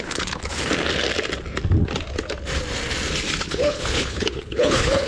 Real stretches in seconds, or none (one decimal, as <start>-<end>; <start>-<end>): 0.6-3.4